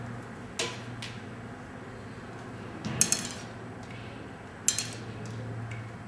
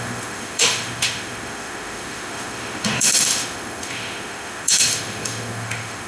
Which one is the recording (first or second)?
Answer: first